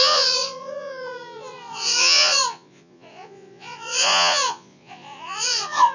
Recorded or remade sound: remade